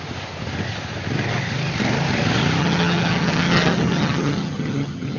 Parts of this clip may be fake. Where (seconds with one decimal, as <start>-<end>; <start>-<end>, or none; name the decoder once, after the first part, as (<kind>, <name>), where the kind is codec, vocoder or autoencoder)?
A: 2.6-5.2 (vocoder, HiFi-GAN)

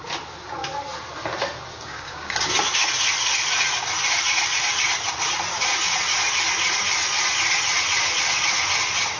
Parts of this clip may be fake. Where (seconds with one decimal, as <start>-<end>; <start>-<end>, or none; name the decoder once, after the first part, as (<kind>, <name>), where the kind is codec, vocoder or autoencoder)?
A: 1.7-2.5 (codec, DAC)

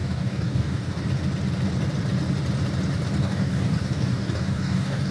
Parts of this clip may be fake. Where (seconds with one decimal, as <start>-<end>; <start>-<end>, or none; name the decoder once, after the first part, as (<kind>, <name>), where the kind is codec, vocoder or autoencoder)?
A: 0.0-1.0 (codec, DAC); 3.2-5.1

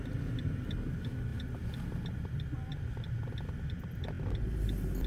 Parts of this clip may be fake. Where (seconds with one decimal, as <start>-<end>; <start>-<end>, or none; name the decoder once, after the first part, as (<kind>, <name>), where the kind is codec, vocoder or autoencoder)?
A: none

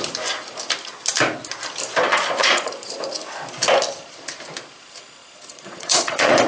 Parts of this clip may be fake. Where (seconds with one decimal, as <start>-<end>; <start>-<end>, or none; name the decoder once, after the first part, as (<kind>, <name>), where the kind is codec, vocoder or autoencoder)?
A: 2.1-2.7 (vocoder, Vocos); 5.2-6.5

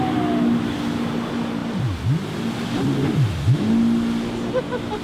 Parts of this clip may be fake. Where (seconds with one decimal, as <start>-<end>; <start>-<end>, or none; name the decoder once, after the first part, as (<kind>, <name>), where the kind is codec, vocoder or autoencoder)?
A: none